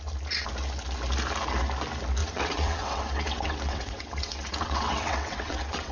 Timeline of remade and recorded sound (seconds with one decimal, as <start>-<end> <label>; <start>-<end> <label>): 0.0-2.2 recorded; 2.2-5.9 remade